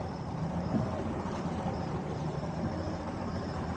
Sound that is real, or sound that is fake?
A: fake